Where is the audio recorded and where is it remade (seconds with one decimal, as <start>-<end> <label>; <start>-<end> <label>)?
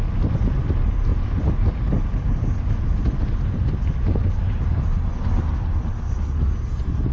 0.0-7.1 recorded